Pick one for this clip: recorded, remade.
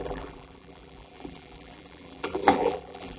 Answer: remade